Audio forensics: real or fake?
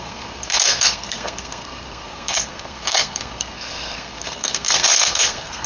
fake